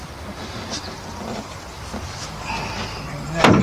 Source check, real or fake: real